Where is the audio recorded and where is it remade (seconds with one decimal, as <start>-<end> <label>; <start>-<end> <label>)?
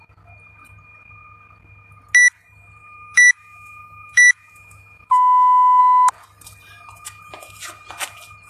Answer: 0.0-2.8 recorded; 2.8-5.8 remade; 5.8-8.5 recorded